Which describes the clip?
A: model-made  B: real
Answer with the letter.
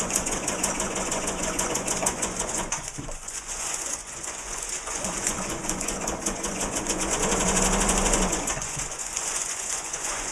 A